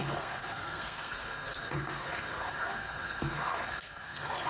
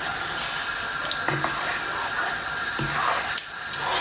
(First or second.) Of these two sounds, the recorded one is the second